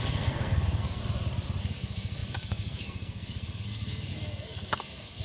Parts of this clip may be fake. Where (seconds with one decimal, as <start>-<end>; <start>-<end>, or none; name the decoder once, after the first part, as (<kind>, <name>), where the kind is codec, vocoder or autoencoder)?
0.0-1.0 (codec, SNAC); 1.6-5.2